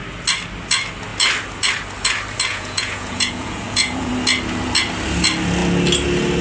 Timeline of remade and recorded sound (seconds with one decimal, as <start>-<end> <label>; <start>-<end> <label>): 0.0-2.5 recorded; 2.5-4.1 remade; 4.1-6.4 recorded